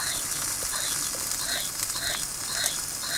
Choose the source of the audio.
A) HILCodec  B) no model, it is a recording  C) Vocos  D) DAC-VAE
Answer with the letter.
B